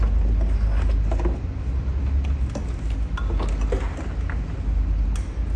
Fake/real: real